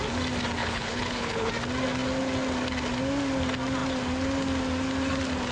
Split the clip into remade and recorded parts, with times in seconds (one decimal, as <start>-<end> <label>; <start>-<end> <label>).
0.0-0.6 recorded; 0.6-1.5 remade; 1.5-5.5 recorded